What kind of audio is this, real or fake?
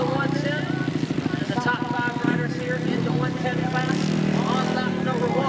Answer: real